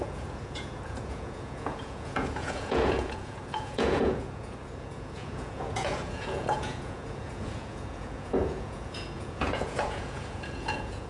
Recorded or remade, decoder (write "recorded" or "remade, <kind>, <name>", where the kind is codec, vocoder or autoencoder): remade, vocoder, Vocos